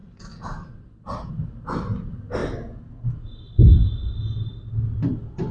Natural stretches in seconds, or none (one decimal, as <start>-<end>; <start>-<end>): 0.0-5.5